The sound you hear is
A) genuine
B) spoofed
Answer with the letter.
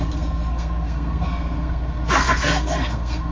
B